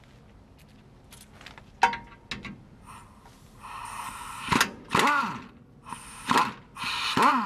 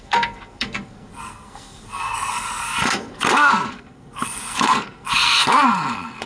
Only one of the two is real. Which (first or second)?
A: first